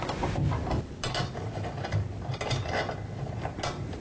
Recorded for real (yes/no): yes